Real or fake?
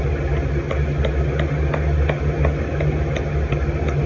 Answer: real